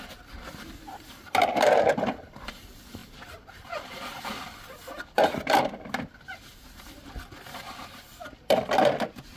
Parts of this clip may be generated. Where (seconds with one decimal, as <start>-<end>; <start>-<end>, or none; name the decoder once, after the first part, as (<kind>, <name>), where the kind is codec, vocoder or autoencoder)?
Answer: 3.0-5.9 (vocoder, BigVGAN v2)